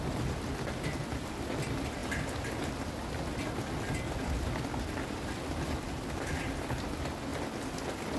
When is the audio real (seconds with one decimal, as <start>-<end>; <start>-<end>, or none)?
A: 0.0-8.2